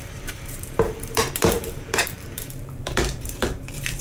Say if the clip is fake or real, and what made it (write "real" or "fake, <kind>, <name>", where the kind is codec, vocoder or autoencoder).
fake, vocoder, BigVGAN v2